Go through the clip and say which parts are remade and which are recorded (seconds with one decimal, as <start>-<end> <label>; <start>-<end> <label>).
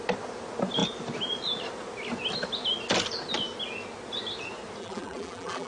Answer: 0.0-4.8 recorded; 4.8-5.7 remade